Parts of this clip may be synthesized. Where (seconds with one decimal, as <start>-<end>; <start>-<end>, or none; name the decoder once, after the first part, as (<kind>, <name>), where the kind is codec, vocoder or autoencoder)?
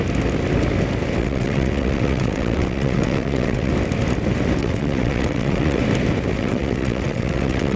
1.2-3.7 (vocoder, WaveNeXt); 4.6-5.8; 6.3-7.8